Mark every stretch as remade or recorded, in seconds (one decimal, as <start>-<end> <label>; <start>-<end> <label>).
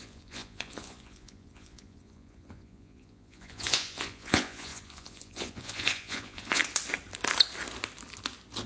0.0-6.6 remade; 6.6-8.7 recorded